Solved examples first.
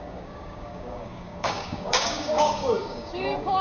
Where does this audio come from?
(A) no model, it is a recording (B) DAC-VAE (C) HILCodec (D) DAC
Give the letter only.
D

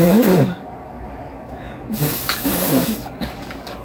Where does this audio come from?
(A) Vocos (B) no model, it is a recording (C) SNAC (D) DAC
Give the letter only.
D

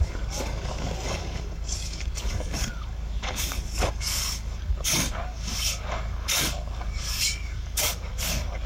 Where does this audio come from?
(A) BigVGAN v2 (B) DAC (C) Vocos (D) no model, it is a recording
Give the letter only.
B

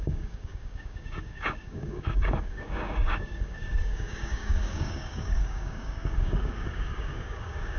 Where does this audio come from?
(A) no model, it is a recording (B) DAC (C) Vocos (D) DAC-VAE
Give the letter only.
B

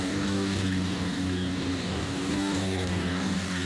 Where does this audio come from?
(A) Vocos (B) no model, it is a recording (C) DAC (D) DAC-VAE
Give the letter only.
C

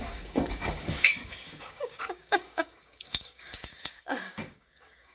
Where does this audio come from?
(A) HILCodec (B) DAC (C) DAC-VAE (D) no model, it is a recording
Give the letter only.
B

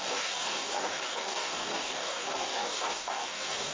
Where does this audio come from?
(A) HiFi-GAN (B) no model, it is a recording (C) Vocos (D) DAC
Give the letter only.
D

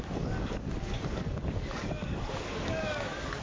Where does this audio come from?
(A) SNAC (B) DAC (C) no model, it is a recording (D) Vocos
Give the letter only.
B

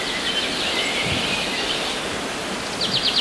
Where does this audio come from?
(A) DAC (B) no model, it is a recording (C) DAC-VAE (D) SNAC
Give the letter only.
B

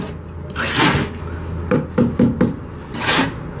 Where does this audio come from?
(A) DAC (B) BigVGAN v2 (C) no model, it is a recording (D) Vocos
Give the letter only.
C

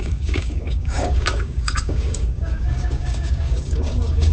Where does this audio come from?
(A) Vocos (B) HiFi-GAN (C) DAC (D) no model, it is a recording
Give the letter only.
C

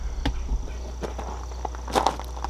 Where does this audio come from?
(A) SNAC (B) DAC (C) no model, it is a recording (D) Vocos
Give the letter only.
C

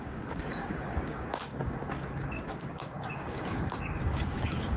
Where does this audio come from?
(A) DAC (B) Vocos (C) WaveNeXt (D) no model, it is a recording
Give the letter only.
A